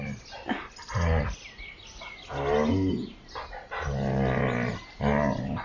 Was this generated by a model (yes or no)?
no